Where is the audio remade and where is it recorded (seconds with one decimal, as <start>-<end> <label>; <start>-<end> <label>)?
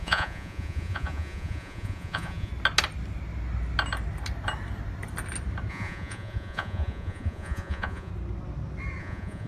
0.0-2.5 remade; 2.5-5.7 recorded; 5.7-8.1 remade; 8.1-9.0 recorded; 9.0-9.5 remade